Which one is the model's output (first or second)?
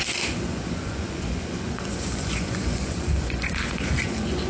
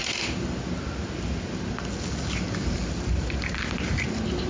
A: first